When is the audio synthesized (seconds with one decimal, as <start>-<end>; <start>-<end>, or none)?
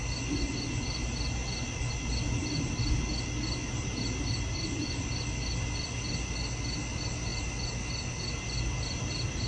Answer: none